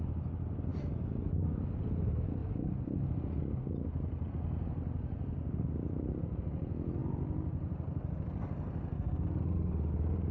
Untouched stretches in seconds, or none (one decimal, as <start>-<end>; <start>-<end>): 0.0-10.3